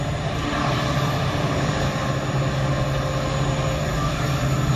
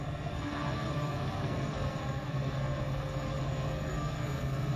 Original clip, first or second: first